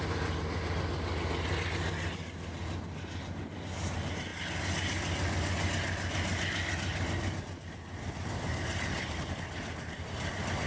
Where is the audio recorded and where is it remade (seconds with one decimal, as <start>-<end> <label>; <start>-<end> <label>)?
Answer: 0.0-10.7 recorded